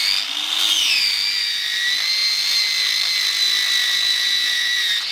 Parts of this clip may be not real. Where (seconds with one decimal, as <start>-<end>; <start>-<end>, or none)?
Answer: 3.8-5.1